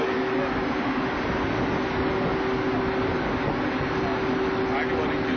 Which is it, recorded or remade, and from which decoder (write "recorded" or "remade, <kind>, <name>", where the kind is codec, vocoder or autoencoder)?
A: recorded